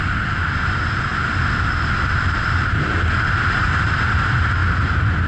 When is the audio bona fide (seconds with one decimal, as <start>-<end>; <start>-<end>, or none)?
0.0-5.3